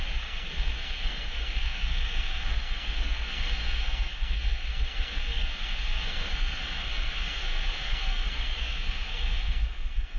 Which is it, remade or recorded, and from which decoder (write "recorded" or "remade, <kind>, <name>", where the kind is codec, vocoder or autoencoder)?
remade, codec, SNAC